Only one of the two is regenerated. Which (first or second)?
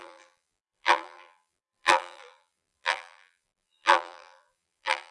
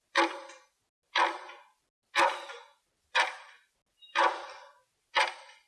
first